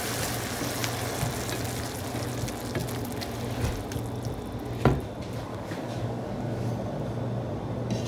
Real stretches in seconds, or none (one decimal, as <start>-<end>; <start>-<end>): 0.0-5.5; 6.7-8.1